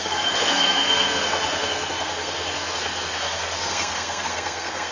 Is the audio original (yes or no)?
no